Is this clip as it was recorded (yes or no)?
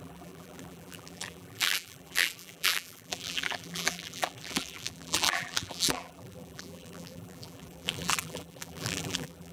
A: no